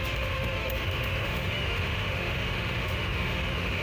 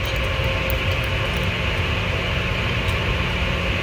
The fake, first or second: first